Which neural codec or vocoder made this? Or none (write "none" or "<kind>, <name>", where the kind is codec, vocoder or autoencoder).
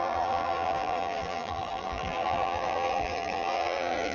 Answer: vocoder, BigVGAN v2